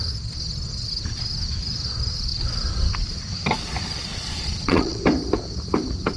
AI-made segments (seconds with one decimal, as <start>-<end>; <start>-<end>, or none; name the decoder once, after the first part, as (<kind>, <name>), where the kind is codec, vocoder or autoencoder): 4.1-5.0 (vocoder, Vocos)